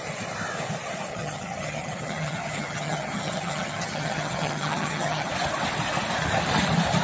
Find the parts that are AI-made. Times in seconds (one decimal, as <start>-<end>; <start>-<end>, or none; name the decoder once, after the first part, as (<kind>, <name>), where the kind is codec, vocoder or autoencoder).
1.1-5.3 (vocoder, HiFi-GAN)